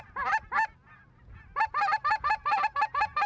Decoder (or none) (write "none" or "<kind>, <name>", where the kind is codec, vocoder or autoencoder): none